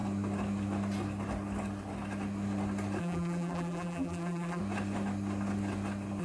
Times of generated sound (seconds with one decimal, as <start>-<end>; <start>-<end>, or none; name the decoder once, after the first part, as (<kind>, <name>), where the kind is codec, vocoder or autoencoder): 3.0-4.6 (vocoder, BigVGAN v2)